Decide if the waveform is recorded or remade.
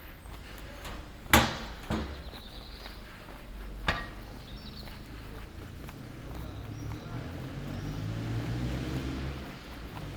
recorded